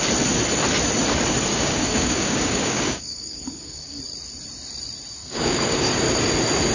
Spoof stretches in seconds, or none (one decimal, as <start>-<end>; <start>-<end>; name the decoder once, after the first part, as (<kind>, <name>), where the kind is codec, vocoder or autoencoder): 1.5-4.0 (codec, DAC); 5.2-6.0